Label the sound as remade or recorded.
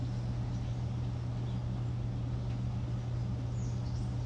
recorded